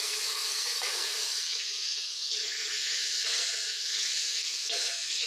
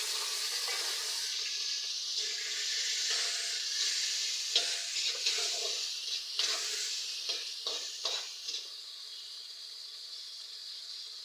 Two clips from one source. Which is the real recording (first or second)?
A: second